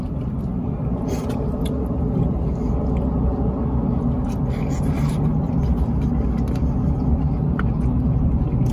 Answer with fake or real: real